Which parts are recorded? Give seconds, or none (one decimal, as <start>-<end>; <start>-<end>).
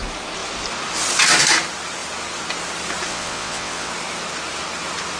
0.0-3.1; 3.9-5.2